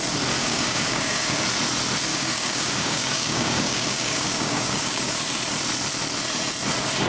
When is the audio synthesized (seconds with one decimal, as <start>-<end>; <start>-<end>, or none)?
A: 0.4-1.4; 2.1-5.1